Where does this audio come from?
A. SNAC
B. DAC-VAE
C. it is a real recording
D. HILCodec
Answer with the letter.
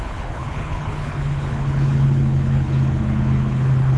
D